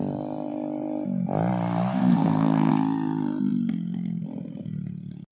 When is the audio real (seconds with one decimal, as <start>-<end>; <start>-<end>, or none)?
0.0-2.0; 2.7-5.3